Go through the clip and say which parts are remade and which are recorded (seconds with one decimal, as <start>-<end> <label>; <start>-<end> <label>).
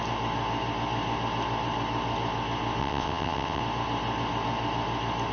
0.0-2.8 recorded; 2.8-3.6 remade; 3.6-5.3 recorded